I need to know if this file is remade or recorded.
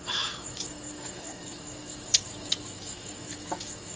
remade